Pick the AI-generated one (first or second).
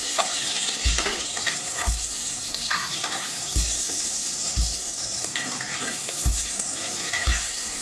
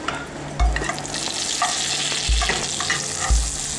first